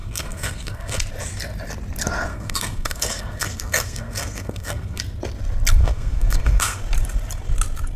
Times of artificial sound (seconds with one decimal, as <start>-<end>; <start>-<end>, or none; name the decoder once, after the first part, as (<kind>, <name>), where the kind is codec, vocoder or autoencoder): 0.0-1.0 (codec, SNAC); 2.3-5.0; 5.8-6.8